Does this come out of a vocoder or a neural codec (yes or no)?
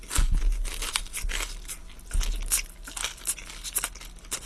no